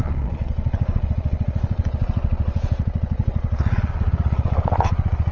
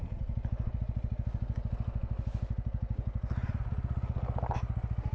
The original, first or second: second